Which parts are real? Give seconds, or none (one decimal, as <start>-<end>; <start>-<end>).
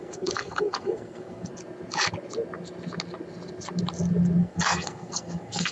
1.5-4.4